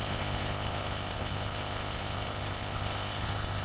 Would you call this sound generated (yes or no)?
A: yes